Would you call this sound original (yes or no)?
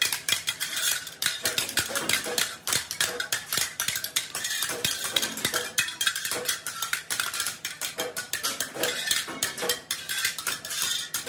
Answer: no